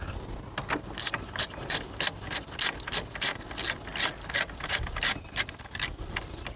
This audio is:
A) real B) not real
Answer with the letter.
A